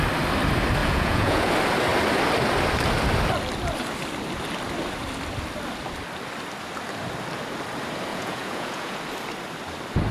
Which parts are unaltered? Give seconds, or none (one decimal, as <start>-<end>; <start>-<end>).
0.0-0.8; 1.5-8.1; 9.0-10.1